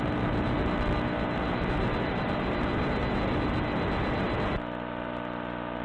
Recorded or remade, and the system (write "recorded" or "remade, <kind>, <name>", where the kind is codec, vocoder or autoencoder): recorded